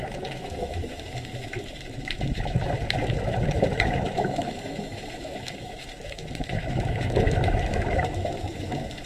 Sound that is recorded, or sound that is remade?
remade